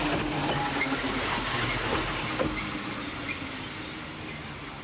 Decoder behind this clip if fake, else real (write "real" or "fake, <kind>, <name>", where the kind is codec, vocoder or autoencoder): real